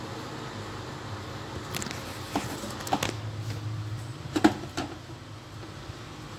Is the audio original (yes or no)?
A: yes